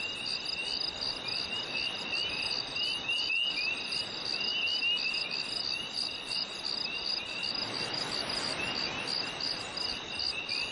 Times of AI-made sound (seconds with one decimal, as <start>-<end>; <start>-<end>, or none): none